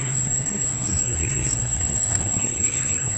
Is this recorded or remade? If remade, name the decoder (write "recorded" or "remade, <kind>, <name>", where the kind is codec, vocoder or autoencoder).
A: remade, codec, SNAC